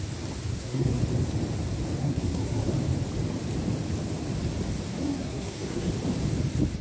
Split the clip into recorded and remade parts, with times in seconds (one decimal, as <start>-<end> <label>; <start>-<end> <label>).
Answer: 0.0-0.5 recorded; 0.5-1.0 remade; 1.0-2.0 recorded; 2.0-2.7 remade; 2.7-5.0 recorded; 5.0-5.9 remade; 5.9-6.8 recorded

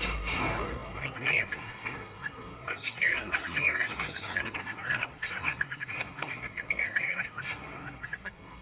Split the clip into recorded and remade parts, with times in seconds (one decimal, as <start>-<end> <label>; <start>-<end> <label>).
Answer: 0.0-8.6 remade

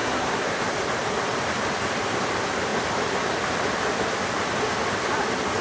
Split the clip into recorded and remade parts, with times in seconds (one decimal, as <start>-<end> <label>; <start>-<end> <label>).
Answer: 0.0-0.6 remade; 0.6-5.6 recorded